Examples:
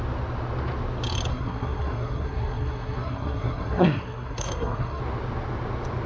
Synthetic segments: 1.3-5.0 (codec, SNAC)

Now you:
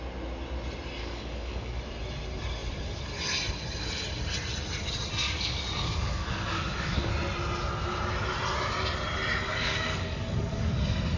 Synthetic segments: 1.0-1.8 (codec, DAC); 5.2-7.1; 9.5-10.7

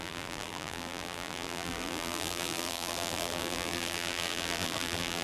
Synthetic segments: 0.0-5.2 (vocoder, BigVGAN v2)

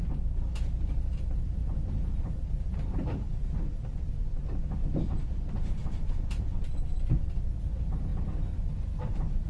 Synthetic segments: none

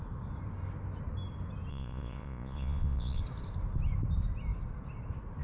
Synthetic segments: 1.7-3.2 (vocoder, Vocos)

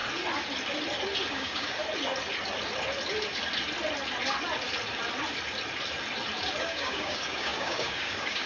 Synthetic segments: 1.3-1.8 (codec, DAC); 6.6-8.5

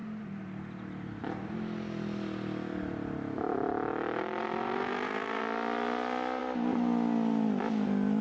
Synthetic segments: 0.0-1.2 (vocoder, BigVGAN v2); 3.9-5.4